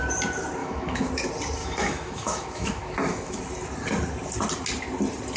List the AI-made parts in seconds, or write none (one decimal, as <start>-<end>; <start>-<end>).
0.6-1.1; 1.6-3.4